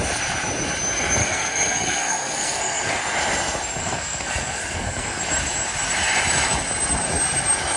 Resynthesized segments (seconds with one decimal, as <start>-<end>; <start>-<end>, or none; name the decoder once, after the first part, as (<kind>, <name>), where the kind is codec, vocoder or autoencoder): 1.2-3.0 (codec, SNAC); 3.8-5.2